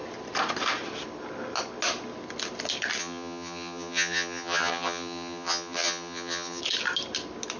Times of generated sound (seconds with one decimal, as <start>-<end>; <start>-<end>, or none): 3.0-6.6